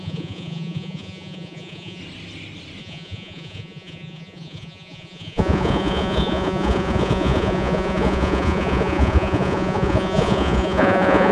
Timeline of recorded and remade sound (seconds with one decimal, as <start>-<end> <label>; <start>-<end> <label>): 0.0-2.0 remade; 2.0-2.8 recorded; 2.8-11.3 remade